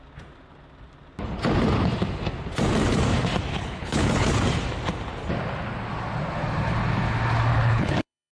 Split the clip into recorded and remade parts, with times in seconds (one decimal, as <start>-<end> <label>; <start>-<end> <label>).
0.0-3.5 recorded; 3.5-4.3 remade; 4.3-7.5 recorded; 7.5-8.3 remade